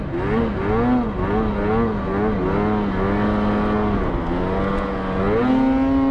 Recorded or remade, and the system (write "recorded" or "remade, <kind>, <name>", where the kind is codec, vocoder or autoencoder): recorded